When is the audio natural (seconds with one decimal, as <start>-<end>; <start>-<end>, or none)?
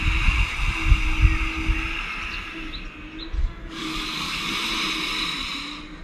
0.0-3.4; 4.5-6.0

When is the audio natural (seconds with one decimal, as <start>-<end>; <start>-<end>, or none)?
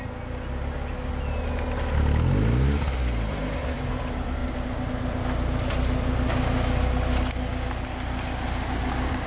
0.0-9.3